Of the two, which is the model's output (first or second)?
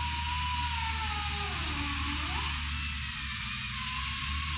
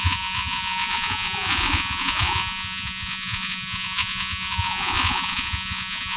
second